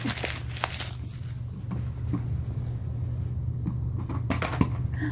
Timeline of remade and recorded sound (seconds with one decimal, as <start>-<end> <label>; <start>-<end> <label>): 0.0-5.1 recorded